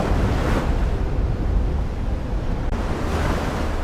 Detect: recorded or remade recorded